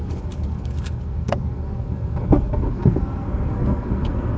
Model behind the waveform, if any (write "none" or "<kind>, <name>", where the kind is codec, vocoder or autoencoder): codec, SNAC